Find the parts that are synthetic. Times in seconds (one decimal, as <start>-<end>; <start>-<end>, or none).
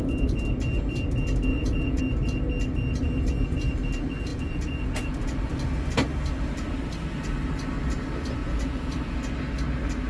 1.5-2.0; 4.3-5.5; 8.4-8.9